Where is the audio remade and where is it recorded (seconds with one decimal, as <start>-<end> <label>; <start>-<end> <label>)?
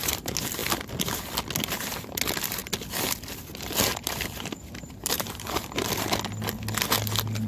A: 0.0-3.9 recorded; 3.9-6.1 remade; 6.1-7.5 recorded